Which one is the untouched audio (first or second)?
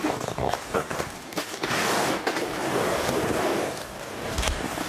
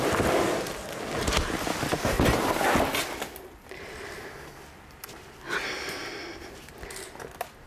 second